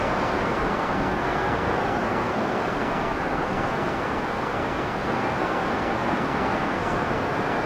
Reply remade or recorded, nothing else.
remade